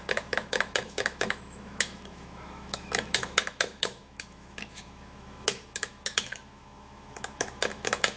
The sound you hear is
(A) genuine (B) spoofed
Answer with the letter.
B